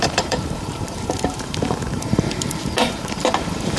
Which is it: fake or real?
fake